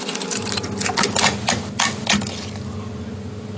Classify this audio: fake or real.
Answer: real